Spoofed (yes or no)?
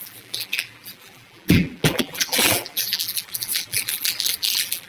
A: yes